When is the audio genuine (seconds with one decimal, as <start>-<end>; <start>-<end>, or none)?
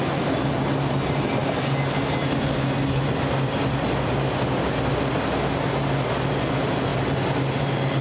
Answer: 0.0-8.0